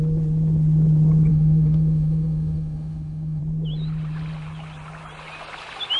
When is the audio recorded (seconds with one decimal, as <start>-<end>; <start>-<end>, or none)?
0.0-1.3; 3.4-6.0